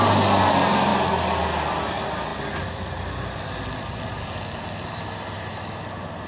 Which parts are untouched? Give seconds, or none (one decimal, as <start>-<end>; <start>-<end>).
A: 0.0-6.3